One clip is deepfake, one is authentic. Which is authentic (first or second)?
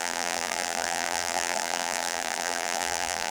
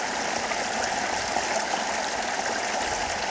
second